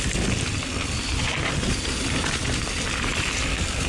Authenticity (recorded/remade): recorded